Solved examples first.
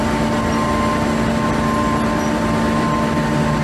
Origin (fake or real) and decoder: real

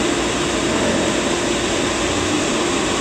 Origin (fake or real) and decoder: real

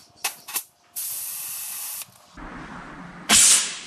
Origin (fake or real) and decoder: real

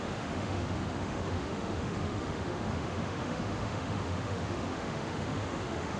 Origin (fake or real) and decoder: fake, autoencoder, DAC-VAE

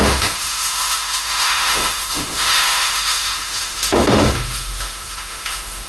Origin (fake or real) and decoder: fake, autoencoder, DAC-VAE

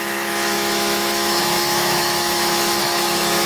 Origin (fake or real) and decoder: fake, autoencoder, DAC-VAE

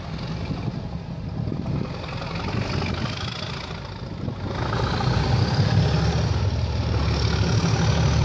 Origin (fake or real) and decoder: real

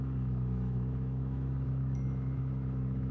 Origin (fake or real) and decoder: fake, autoencoder, DAC-VAE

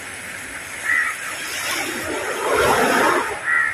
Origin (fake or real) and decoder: real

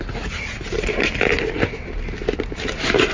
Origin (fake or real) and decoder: real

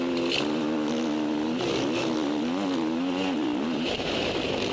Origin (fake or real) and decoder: real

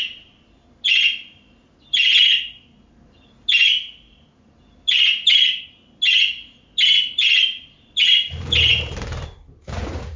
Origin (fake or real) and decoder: real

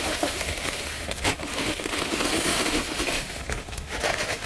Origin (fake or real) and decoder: fake, autoencoder, DAC-VAE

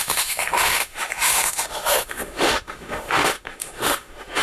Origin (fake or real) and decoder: fake, autoencoder, DAC-VAE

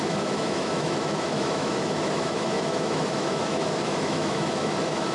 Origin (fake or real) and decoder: fake, autoencoder, DAC-VAE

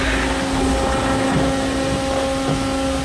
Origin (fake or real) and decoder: real